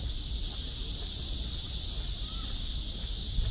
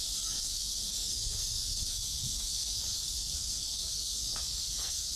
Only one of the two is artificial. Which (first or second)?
second